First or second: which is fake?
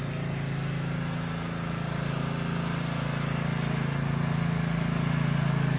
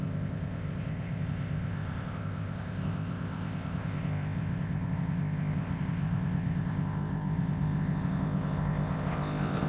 second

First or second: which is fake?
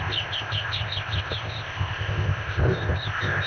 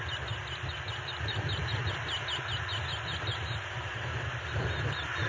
first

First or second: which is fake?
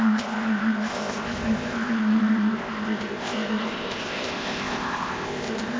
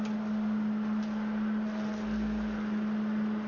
first